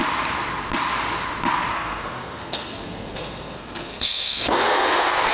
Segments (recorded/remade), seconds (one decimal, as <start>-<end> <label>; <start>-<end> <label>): 0.0-1.7 recorded; 1.7-5.3 remade